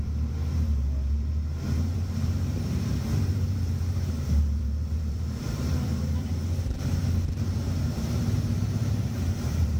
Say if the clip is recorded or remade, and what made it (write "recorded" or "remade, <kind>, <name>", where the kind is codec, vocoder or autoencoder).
remade, vocoder, BigVGAN v2